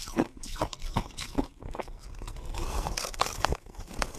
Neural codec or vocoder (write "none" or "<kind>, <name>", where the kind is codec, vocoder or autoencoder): codec, SNAC